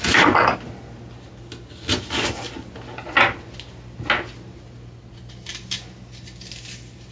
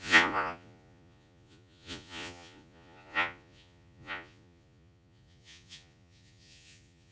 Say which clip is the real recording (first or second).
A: first